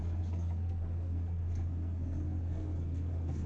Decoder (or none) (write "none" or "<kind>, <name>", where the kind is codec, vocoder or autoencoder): codec, SNAC